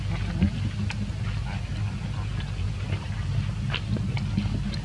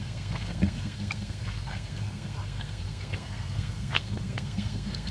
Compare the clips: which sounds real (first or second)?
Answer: first